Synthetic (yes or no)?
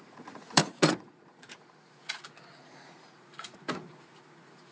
yes